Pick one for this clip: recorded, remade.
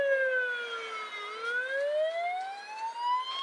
recorded